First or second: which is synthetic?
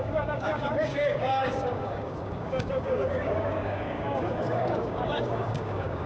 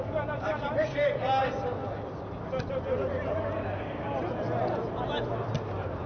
first